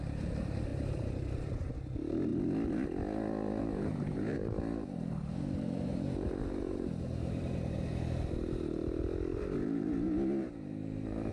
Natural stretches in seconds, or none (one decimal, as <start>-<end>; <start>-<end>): 0.0-0.7; 1.7-3.6; 7.9-9.3